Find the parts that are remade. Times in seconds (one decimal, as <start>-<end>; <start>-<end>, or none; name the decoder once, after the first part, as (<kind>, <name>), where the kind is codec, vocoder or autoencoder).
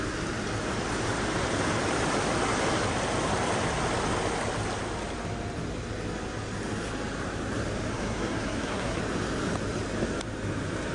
7.9-9.0 (codec, SNAC)